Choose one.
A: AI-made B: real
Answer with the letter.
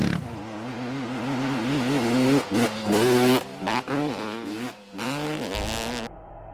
B